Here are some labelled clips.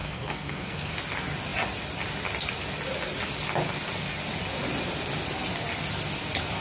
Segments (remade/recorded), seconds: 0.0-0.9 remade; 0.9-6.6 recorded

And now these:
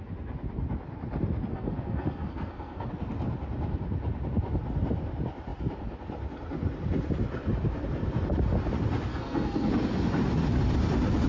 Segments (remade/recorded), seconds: 0.0-1.5 recorded; 1.5-2.9 remade; 2.9-9.1 recorded; 9.1-9.7 remade; 9.7-11.3 recorded

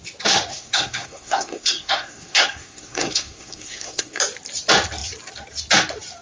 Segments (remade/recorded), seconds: 0.0-0.5 recorded; 0.5-4.2 remade; 4.2-6.2 recorded

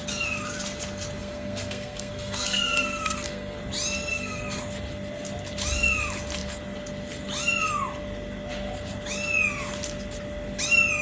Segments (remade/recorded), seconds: 0.0-1.2 recorded; 1.2-3.6 remade; 3.6-4.1 recorded; 4.1-4.6 remade; 4.6-11.0 recorded

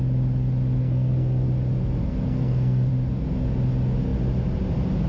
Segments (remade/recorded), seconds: 0.0-0.8 recorded; 0.8-1.5 remade; 1.5-2.0 recorded; 2.0-2.9 remade; 2.9-5.1 recorded

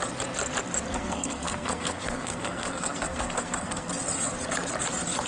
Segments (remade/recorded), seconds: 0.0-0.9 recorded; 0.9-3.9 remade; 3.9-5.3 recorded